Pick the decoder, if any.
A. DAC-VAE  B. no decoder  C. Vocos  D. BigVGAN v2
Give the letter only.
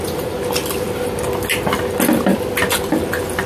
B